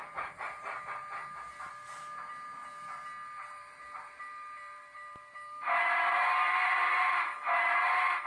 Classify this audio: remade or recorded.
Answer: recorded